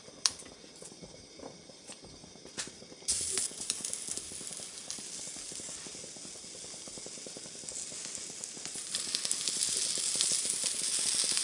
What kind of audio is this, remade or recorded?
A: recorded